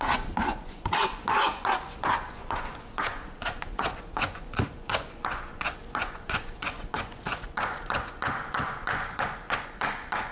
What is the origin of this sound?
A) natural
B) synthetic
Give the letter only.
B